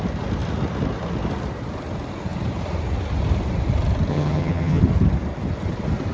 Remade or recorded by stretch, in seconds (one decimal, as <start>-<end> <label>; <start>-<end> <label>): 0.0-4.1 recorded; 4.1-4.8 remade; 4.8-6.1 recorded